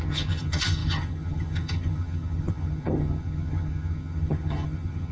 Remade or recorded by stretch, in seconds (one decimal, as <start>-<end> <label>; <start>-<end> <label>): 0.0-5.1 remade